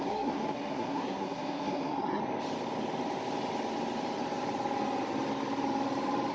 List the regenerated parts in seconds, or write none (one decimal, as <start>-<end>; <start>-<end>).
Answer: 0.0-2.2